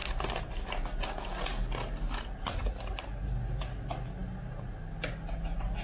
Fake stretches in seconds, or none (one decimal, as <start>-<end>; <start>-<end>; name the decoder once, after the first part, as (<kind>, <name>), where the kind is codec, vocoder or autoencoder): none